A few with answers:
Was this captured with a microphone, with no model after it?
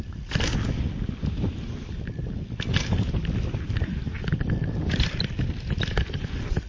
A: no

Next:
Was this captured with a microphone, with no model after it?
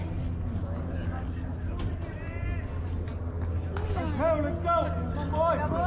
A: yes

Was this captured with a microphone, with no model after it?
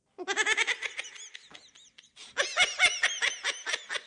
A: yes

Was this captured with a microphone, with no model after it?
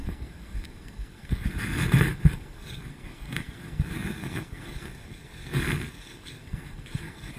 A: no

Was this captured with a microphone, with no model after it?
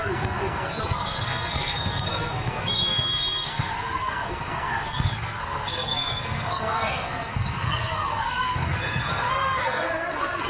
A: no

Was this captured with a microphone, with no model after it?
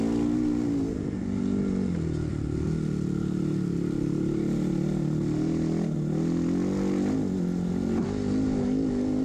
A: yes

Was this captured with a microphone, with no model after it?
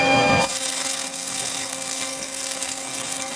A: no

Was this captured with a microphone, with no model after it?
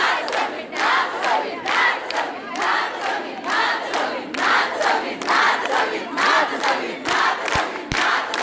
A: yes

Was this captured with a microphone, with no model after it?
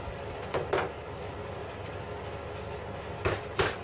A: yes